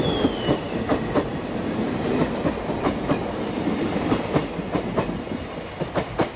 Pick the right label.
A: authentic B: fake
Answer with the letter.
A